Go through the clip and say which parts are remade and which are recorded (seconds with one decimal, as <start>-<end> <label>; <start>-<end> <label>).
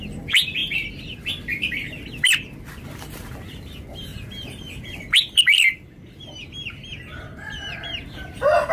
0.0-8.7 recorded